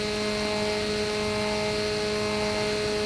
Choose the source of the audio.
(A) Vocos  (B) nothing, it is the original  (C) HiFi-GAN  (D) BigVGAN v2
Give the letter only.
B